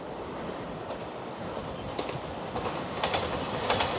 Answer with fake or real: real